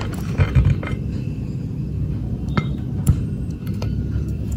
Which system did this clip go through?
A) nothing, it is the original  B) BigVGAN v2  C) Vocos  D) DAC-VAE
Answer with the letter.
B